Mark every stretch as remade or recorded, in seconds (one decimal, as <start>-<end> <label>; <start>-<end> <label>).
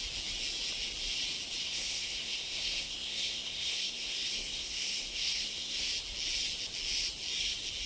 0.0-1.6 recorded; 1.6-5.9 remade; 5.9-7.9 recorded